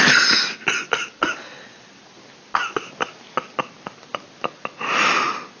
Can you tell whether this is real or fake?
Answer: real